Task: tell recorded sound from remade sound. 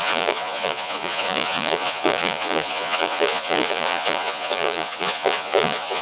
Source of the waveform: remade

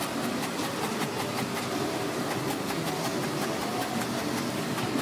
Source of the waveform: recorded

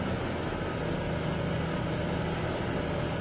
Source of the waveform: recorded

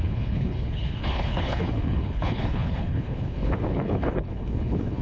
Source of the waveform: remade